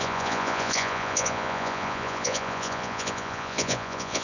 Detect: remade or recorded remade